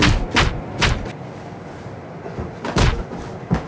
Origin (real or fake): real